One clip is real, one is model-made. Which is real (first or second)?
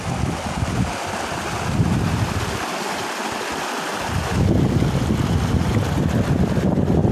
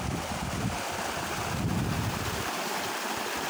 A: first